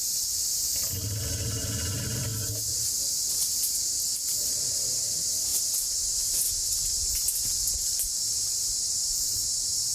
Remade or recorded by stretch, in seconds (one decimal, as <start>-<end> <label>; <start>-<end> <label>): 0.0-9.9 recorded

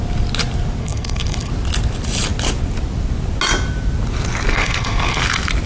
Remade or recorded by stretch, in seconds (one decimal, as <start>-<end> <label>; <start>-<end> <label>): 0.0-0.8 recorded; 0.8-1.5 remade; 1.5-4.5 recorded; 4.5-5.2 remade; 5.2-5.7 recorded

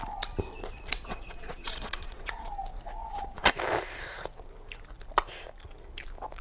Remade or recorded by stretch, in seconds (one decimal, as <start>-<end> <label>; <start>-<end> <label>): 0.0-0.9 recorded; 0.9-2.5 remade; 2.5-3.0 recorded; 3.0-3.5 remade; 3.5-6.4 recorded

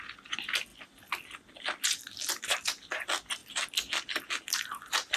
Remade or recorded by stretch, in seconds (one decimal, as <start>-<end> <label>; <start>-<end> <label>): 0.0-5.2 recorded

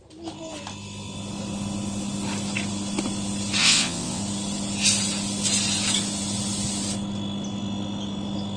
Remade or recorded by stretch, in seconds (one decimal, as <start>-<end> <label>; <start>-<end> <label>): 0.0-3.6 recorded; 3.6-4.2 remade; 4.2-8.6 recorded

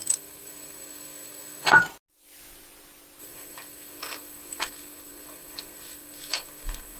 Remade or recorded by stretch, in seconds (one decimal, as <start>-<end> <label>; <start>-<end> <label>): 0.0-1.8 remade; 1.8-3.2 recorded; 3.2-7.0 remade

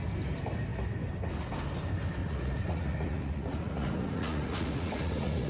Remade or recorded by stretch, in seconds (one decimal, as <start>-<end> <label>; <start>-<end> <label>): 0.0-2.2 recorded; 2.2-5.5 remade